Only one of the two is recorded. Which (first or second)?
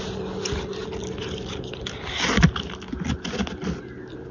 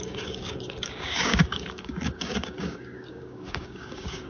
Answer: first